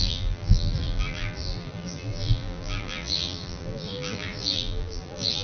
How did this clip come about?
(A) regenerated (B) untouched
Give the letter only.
A